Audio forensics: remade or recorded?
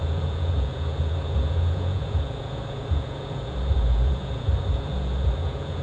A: remade